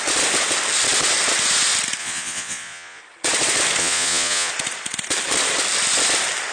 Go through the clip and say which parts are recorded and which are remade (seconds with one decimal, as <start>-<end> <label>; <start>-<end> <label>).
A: 0.0-2.0 recorded; 2.0-3.0 remade; 3.0-3.8 recorded; 3.8-4.5 remade; 4.5-6.5 recorded